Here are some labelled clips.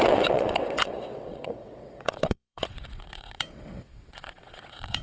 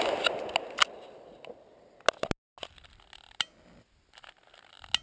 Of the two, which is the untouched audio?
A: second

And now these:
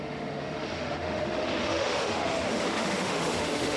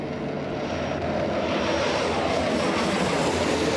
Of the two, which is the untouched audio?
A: second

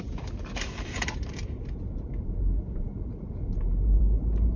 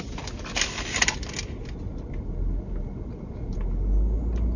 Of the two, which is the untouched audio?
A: second